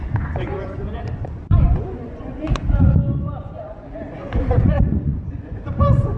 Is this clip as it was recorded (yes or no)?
no